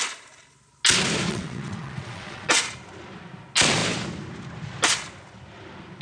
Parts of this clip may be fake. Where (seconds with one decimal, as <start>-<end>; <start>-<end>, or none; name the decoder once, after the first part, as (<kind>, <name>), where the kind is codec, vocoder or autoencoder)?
1.3-2.6 (vocoder, WaveNeXt)